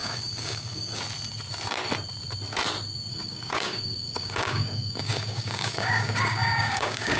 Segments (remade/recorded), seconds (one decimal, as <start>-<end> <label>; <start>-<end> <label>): 0.0-1.0 remade; 1.0-3.1 recorded; 3.1-7.2 remade